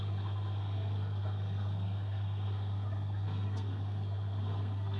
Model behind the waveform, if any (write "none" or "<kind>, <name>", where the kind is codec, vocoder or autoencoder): codec, SNAC